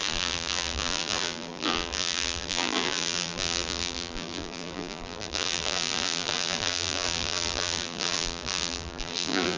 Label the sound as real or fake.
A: fake